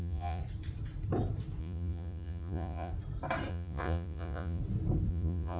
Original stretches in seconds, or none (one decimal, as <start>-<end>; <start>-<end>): 0.4-1.6; 2.9-3.5; 4.6-5.1